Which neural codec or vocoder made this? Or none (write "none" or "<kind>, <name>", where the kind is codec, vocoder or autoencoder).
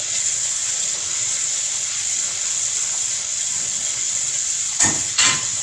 vocoder, WaveNeXt